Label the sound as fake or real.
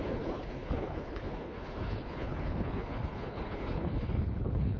fake